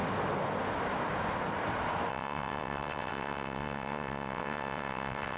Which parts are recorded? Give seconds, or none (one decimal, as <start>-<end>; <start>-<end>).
0.0-2.1